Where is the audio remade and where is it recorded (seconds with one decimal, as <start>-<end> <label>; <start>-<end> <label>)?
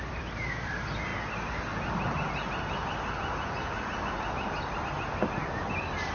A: 0.0-1.1 remade; 1.1-4.8 recorded; 4.8-6.1 remade